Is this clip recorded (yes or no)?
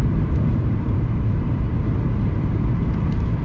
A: no